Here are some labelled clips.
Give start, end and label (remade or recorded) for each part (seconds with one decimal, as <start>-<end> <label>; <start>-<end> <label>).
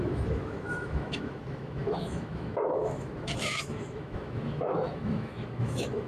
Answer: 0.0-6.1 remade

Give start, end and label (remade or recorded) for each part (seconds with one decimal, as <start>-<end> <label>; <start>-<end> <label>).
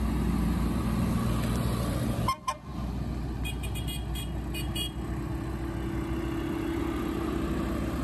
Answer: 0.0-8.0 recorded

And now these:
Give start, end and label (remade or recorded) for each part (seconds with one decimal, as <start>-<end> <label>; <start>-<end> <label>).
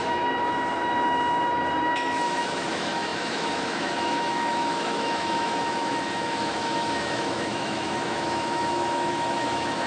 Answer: 0.0-9.9 remade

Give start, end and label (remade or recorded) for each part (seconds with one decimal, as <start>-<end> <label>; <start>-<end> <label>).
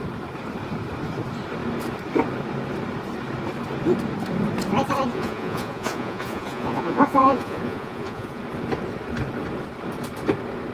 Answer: 0.0-5.1 recorded; 5.1-8.4 remade; 8.4-10.7 recorded